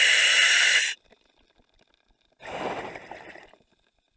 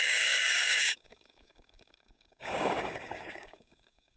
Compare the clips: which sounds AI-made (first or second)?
second